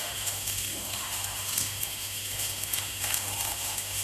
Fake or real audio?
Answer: fake